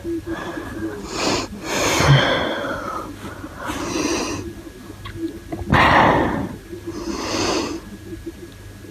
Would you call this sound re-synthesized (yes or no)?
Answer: no